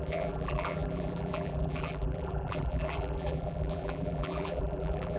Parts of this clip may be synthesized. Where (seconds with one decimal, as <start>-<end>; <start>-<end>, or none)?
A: 0.0-5.2